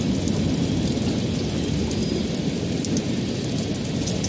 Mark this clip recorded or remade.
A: recorded